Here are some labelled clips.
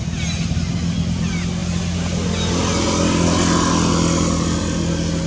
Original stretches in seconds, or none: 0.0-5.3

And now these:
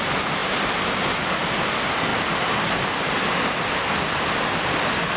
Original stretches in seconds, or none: 0.0-5.2

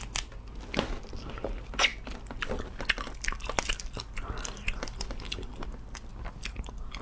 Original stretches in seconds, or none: 0.0-7.0

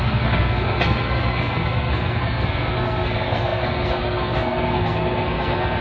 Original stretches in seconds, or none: none

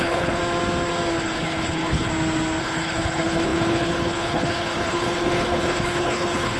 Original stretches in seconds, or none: 0.4-1.2; 2.1-2.6

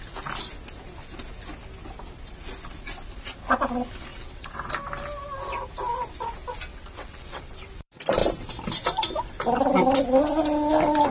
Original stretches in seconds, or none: 0.0-4.1; 4.7-6.7; 7.4-11.1